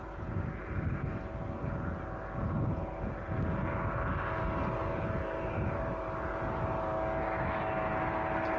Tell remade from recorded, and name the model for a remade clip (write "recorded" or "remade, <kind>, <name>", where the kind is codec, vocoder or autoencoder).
recorded